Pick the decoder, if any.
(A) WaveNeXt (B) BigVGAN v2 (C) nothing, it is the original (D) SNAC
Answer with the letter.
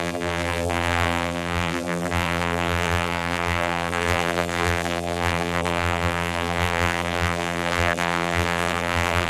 B